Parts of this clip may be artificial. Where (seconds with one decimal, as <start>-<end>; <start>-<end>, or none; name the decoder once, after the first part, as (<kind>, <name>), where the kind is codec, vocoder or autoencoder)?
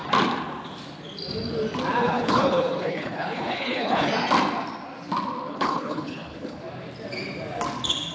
2.0-4.1 (codec, HILCodec); 5.5-6.6